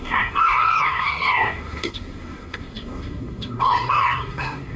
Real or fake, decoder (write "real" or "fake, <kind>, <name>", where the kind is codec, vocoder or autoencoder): fake, codec, SNAC